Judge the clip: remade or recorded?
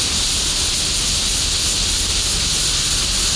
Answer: recorded